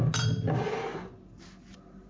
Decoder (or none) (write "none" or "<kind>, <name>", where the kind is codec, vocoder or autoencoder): none